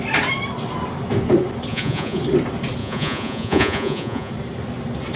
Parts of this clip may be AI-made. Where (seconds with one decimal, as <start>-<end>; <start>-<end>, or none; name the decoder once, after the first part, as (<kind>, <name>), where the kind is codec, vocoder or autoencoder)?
1.7-2.2 (vocoder, Vocos); 2.8-4.3